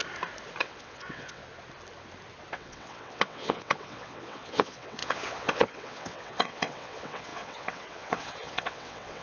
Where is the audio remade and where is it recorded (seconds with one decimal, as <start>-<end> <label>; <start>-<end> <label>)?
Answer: 0.0-0.6 recorded; 0.6-1.4 remade; 1.4-2.5 recorded; 2.5-9.2 remade

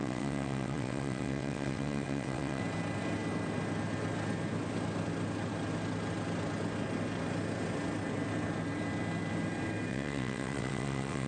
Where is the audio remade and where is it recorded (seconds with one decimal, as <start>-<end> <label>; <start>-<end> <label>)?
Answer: 0.0-2.6 remade; 2.6-9.9 recorded; 9.9-11.3 remade

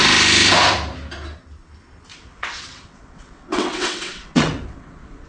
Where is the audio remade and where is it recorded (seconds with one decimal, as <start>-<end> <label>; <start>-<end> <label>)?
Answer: 0.0-2.1 recorded; 2.1-5.3 remade

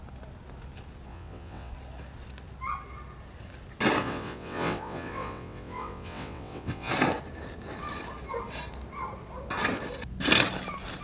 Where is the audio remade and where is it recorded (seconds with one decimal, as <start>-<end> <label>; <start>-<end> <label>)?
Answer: 0.0-1.1 recorded; 1.1-1.7 remade; 1.7-4.0 recorded; 4.0-6.9 remade; 6.9-11.0 recorded

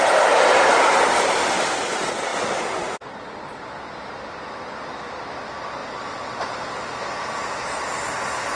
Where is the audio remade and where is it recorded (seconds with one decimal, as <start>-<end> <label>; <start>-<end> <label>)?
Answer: 0.0-8.6 recorded

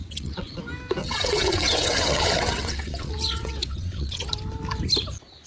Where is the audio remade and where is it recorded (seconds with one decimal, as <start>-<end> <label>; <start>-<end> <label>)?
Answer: 0.0-0.6 remade; 0.6-1.0 recorded; 1.0-4.3 remade; 4.3-5.5 recorded

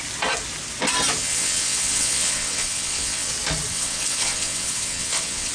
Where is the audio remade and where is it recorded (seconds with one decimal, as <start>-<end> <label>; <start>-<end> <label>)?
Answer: 0.0-1.2 recorded; 1.2-3.3 remade; 3.3-3.7 recorded; 3.7-5.5 remade